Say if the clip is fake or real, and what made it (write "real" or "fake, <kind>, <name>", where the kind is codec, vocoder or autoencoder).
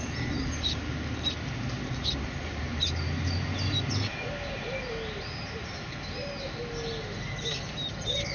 real